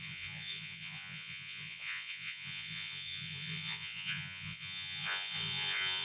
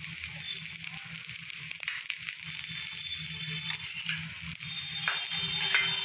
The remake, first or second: first